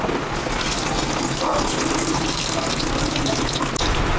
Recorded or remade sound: recorded